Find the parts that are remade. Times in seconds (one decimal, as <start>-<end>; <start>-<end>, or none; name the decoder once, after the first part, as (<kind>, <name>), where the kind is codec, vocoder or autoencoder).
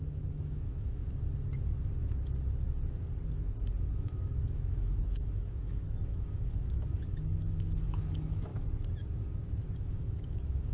0.0-1.0 (autoencoder, DAC-VAE); 3.9-8.5; 9.6-10.7